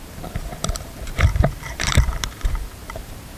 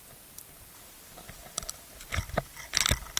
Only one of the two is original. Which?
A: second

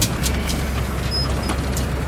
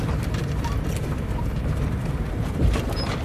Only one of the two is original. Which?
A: first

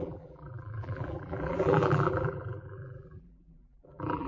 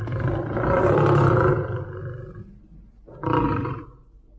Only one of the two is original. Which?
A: second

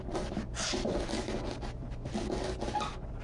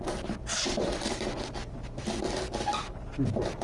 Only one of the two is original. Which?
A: first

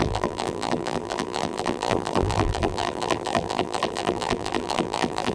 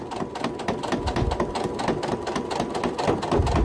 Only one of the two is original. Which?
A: second